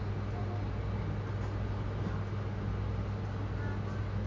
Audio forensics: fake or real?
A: real